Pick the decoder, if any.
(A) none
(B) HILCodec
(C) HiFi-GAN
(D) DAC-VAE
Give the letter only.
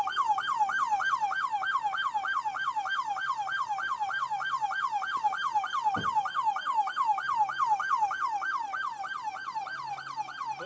A